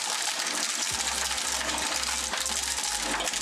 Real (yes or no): yes